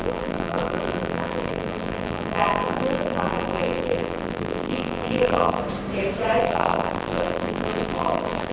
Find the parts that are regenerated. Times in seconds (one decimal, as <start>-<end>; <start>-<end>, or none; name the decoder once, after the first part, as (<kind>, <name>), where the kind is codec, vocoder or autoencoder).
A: 0.0-5.6 (vocoder, BigVGAN v2); 6.4-8.5